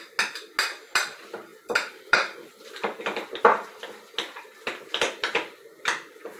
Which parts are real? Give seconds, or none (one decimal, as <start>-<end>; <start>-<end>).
0.0-1.5; 3.0-6.4